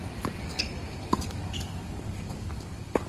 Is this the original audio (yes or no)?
no